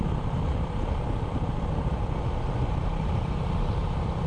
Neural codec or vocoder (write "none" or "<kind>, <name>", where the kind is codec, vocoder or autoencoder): none